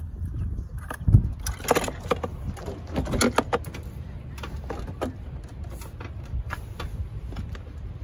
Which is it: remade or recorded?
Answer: recorded